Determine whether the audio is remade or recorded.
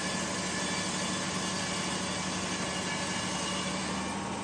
recorded